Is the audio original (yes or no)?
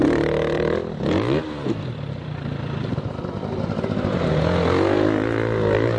yes